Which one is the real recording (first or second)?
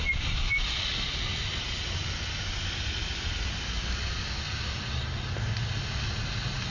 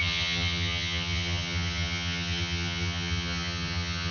first